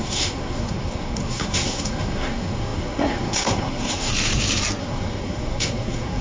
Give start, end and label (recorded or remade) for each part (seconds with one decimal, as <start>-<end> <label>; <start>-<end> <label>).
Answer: 0.0-4.1 remade; 4.1-4.8 recorded; 4.8-6.2 remade